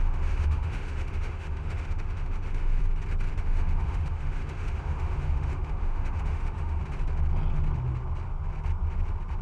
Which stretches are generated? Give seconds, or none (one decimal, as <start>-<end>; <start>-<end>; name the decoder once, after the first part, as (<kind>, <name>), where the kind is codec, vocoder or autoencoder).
0.0-2.8 (autoencoder, DAC-VAE); 3.3-6.8